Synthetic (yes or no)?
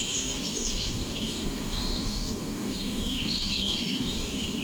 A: yes